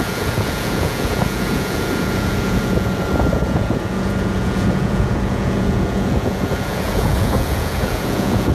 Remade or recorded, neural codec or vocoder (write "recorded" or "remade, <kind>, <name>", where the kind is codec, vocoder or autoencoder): remade, vocoder, Vocos